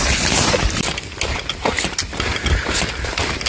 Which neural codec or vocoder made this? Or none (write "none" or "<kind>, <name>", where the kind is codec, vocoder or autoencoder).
none